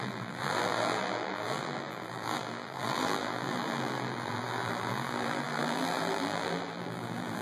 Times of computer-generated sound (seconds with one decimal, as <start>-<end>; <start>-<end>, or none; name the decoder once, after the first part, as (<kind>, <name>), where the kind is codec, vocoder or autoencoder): 0.0-7.4 (vocoder, BigVGAN v2)